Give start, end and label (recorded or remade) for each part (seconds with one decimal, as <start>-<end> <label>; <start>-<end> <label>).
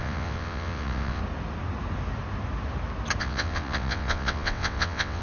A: 0.0-1.2 remade; 1.2-3.2 recorded; 3.2-5.2 remade